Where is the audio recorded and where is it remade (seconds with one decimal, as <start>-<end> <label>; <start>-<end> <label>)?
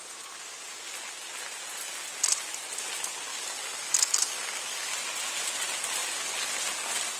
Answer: 0.0-3.3 recorded; 3.3-4.9 remade; 4.9-7.2 recorded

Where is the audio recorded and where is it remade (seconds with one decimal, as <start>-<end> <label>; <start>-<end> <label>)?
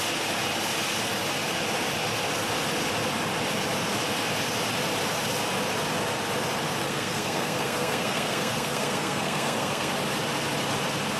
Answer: 0.0-6.8 recorded; 6.8-9.9 remade; 9.9-11.2 recorded